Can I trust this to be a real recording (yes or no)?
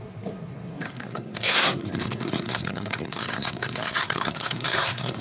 no